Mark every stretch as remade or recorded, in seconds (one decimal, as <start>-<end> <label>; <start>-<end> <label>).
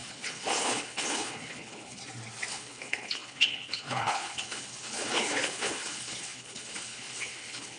0.0-2.0 remade; 2.0-2.5 recorded; 2.5-7.8 remade